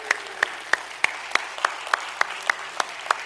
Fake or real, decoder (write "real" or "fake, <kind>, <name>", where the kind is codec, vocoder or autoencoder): real